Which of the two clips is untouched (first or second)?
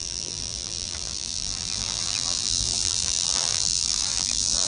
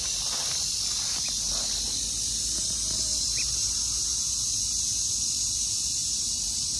second